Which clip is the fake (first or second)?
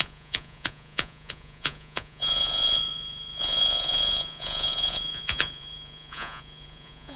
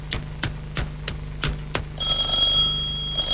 first